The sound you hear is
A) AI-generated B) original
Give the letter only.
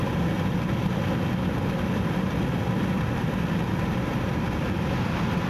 B